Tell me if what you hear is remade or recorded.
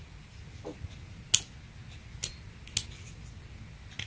recorded